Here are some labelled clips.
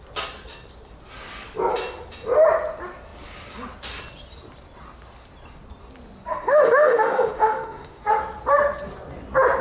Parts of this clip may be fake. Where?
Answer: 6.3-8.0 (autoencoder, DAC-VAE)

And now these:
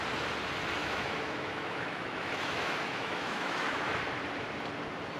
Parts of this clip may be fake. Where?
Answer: 0.8-3.9 (autoencoder, DAC-VAE)

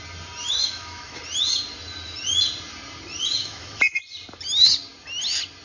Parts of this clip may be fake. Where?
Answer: 0.4-1.2 (autoencoder, DAC-VAE); 3.4-4.0

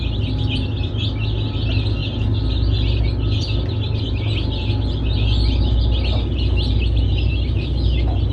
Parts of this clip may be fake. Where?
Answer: none

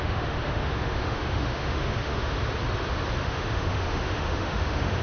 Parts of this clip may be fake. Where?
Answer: 0.0-2.4 (autoencoder, DAC-VAE); 3.2-5.0

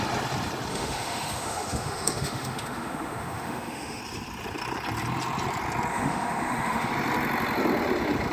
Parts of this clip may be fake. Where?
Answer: 0.7-4.0 (autoencoder, DAC-VAE); 5.9-6.9

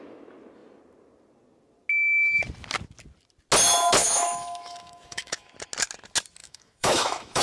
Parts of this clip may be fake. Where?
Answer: 4.0-5.5 (autoencoder, DAC-VAE); 6.4-7.4

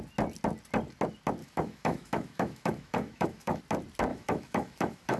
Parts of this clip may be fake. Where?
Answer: 1.4-3.6 (autoencoder, DAC-VAE); 4.1-5.2